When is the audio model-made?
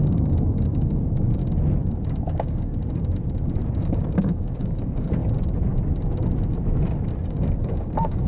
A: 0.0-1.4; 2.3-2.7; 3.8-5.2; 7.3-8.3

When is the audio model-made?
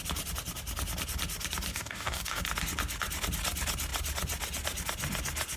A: 1.7-2.4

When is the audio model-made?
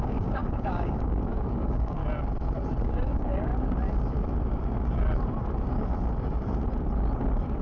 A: 0.0-2.0; 2.8-3.5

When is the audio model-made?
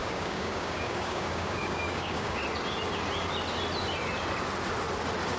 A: 0.0-2.4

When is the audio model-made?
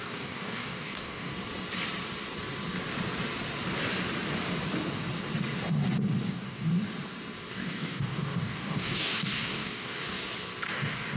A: 0.0-1.3; 6.3-6.7; 7.5-10.2; 10.7-11.2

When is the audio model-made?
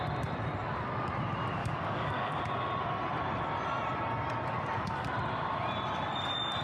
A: 1.6-2.4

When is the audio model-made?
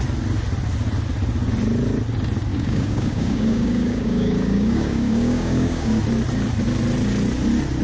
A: 2.5-6.0